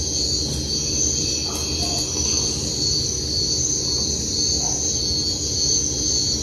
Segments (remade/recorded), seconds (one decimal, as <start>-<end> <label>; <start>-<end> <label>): 0.0-6.4 recorded